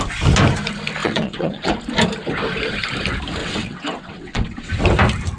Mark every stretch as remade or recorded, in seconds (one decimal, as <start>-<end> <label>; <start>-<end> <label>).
0.0-1.0 recorded; 1.0-1.7 remade; 1.7-3.4 recorded; 3.4-4.7 remade; 4.7-5.4 recorded